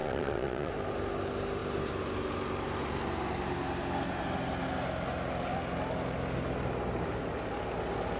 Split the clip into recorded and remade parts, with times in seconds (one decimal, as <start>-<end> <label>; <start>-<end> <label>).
0.0-0.7 remade; 0.7-8.2 recorded